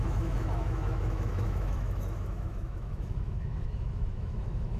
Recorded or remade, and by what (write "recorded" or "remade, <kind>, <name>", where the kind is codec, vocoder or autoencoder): remade, autoencoder, DAC-VAE